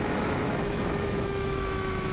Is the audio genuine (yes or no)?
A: no